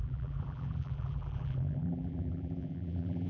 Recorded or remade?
remade